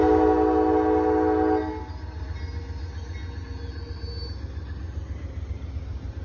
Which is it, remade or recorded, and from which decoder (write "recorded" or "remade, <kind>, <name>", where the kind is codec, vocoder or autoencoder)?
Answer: recorded